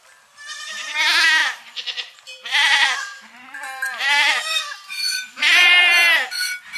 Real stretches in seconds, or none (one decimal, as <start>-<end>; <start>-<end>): 0.0-1.4; 4.6-5.1; 5.8-6.8